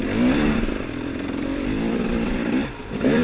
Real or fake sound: fake